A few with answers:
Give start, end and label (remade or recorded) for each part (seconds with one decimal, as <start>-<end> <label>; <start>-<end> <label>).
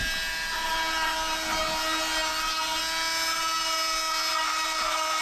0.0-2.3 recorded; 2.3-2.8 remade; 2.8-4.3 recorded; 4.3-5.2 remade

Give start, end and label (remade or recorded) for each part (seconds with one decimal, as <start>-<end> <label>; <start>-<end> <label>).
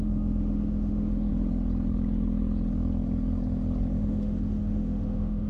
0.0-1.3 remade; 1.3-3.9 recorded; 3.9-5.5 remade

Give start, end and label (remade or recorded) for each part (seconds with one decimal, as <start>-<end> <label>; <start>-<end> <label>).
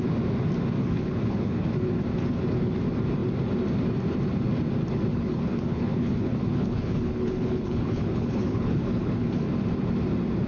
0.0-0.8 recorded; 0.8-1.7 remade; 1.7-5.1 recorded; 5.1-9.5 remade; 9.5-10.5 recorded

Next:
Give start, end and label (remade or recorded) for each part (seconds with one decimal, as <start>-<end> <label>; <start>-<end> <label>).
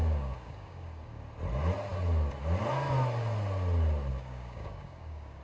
0.0-1.2 remade; 1.2-4.1 recorded; 4.1-5.4 remade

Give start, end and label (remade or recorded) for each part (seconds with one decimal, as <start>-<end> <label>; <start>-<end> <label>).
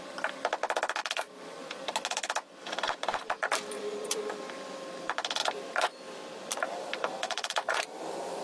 0.0-1.0 recorded; 1.0-1.6 remade; 1.6-2.6 recorded; 2.6-4.2 remade; 4.2-5.4 recorded; 5.4-8.4 remade